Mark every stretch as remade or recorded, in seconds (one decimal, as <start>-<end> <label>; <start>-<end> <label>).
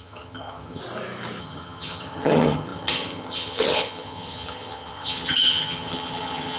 0.0-0.8 remade; 0.8-1.4 recorded; 1.4-6.6 remade